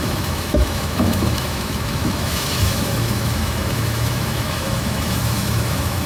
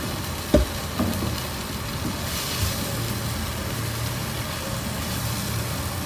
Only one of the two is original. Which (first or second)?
second